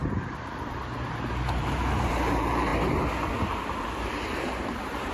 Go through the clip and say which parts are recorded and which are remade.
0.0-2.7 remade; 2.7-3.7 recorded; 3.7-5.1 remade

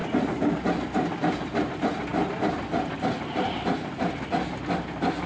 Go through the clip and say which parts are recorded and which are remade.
0.0-2.1 recorded; 2.1-5.3 remade

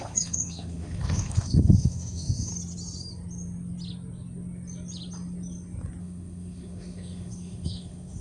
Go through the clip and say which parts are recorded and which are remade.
0.0-2.5 remade; 2.5-6.0 recorded; 6.0-8.2 remade